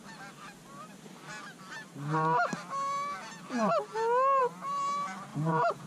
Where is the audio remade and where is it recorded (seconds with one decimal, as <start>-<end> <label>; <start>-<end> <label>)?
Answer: 0.0-5.3 recorded; 5.3-5.9 remade